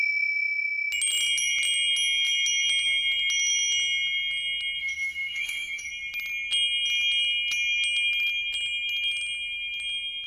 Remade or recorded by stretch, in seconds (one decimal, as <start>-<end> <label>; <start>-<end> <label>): 0.0-4.8 recorded; 4.8-5.9 remade; 5.9-10.3 recorded

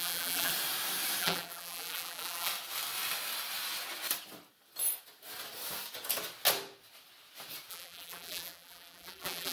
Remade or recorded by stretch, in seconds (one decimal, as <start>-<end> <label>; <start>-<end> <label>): 0.0-0.5 remade; 0.5-1.2 recorded; 1.2-2.5 remade; 2.5-7.7 recorded; 7.7-9.5 remade

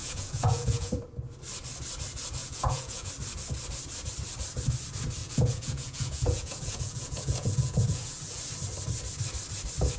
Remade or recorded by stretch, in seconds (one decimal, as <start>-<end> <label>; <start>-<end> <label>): 0.0-0.9 remade; 0.9-2.4 recorded; 2.4-3.1 remade; 3.1-5.2 recorded; 5.2-8.4 remade; 8.4-10.0 recorded

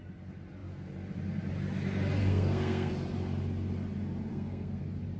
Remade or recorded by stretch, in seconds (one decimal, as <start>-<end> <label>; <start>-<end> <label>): 0.0-2.2 recorded; 2.2-2.9 remade; 2.9-4.3 recorded; 4.3-4.8 remade; 4.8-5.2 recorded

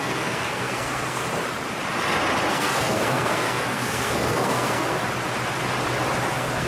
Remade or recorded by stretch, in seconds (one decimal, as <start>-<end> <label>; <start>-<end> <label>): 0.0-1.2 remade; 1.2-2.5 recorded; 2.5-5.0 remade; 5.0-6.3 recorded; 6.3-6.7 remade

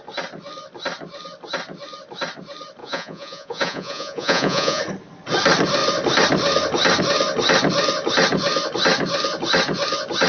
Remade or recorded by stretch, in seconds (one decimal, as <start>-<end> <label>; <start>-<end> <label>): 0.0-2.8 recorded; 2.8-4.8 remade; 4.8-10.3 recorded